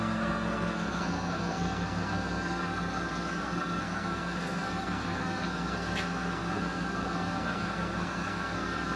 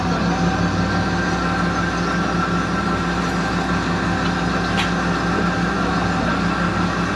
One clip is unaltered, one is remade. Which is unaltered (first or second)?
second